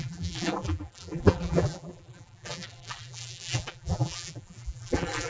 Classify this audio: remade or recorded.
remade